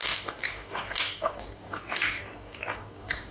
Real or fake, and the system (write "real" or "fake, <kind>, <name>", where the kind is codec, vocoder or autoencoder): fake, codec, DAC